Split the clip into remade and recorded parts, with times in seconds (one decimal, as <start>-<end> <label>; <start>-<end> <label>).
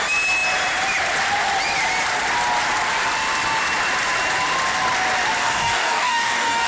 0.0-5.4 recorded; 5.4-6.7 remade